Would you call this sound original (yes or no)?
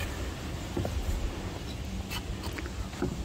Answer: yes